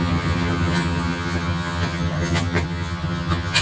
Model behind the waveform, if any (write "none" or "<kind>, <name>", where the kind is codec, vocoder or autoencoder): vocoder, HiFi-GAN